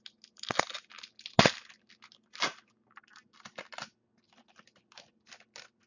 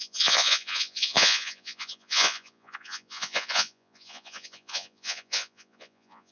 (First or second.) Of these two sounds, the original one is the first